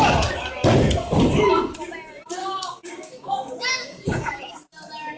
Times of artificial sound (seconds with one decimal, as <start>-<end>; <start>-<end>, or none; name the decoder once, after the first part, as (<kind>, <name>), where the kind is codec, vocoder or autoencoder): 2.4-4.5 (codec, DAC)